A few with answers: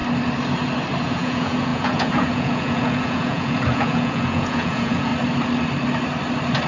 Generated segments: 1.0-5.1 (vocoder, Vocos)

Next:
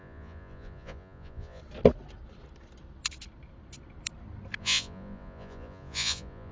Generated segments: 0.0-1.6 (vocoder, Vocos); 4.6-6.5

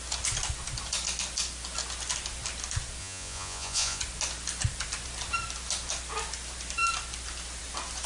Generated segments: 3.0-4.0 (vocoder, Vocos)

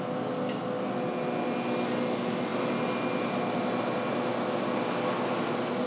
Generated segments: none

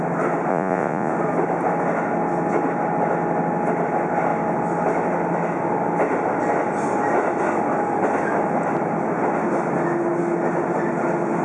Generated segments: 0.5-1.1 (vocoder, Vocos)

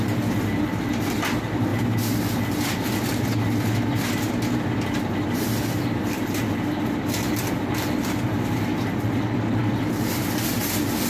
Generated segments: none